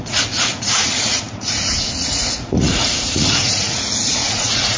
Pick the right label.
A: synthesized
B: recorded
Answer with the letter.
A